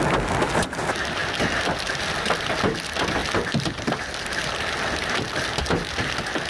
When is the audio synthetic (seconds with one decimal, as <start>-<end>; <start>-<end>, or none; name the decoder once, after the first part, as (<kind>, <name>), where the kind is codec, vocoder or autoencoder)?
none